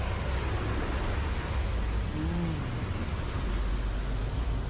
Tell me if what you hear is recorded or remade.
recorded